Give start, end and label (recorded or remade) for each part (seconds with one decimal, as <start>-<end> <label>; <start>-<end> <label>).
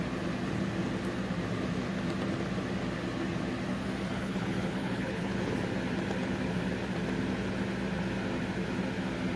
0.0-4.1 recorded; 4.1-5.5 remade; 5.5-9.4 recorded